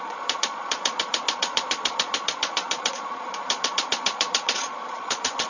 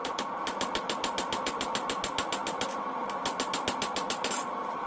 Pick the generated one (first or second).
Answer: first